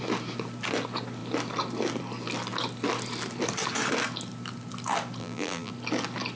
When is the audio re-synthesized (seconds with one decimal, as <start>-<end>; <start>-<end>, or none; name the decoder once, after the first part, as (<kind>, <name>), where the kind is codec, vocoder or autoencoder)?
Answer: 5.2-5.7 (vocoder, BigVGAN v2)